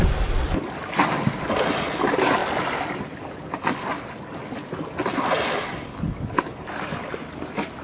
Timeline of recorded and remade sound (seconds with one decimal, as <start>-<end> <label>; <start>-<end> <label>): 0.0-7.8 recorded